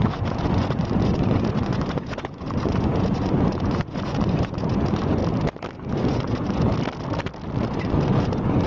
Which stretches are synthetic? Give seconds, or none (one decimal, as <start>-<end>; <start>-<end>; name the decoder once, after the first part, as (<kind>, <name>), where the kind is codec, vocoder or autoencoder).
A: 0.0-5.2 (vocoder, Vocos); 5.9-6.7; 7.6-8.7